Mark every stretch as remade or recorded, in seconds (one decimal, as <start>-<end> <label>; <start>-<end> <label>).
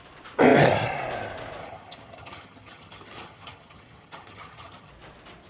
0.0-1.6 recorded; 1.6-4.9 remade; 4.9-5.5 recorded